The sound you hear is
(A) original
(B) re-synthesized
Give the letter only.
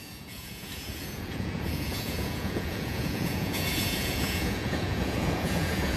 B